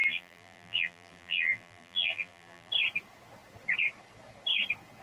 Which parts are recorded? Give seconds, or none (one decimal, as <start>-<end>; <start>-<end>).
2.7-5.0